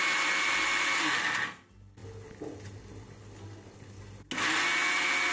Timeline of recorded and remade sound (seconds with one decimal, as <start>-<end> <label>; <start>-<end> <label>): 0.0-5.3 recorded

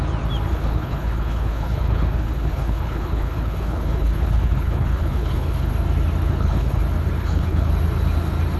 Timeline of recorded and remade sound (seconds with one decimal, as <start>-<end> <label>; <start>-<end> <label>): 0.0-0.5 recorded; 0.5-5.7 remade; 5.7-6.2 recorded; 6.2-6.8 remade; 6.8-7.2 recorded; 7.2-7.7 remade; 7.7-8.6 recorded